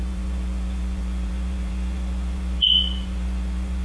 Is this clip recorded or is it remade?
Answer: remade